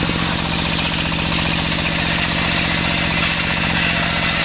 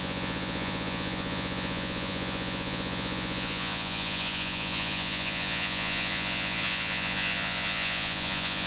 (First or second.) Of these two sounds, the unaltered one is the first